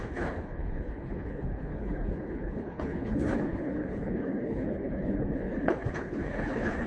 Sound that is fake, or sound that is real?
fake